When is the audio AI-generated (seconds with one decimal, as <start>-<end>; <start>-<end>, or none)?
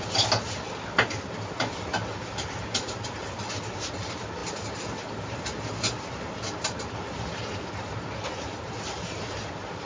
none